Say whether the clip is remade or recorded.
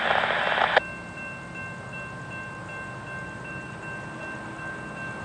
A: recorded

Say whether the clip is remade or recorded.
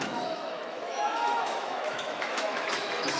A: remade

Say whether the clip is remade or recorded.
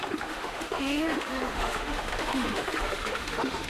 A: remade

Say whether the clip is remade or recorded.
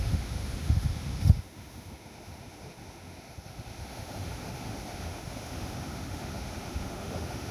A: remade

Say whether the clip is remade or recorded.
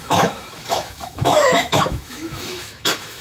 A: remade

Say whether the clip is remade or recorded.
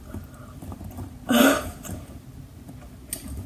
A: recorded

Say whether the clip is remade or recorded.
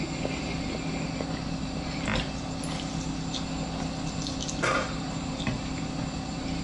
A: recorded